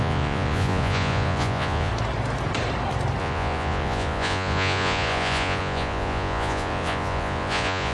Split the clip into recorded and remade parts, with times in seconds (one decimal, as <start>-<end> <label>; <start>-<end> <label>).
0.0-1.9 remade; 1.9-3.2 recorded; 3.2-7.9 remade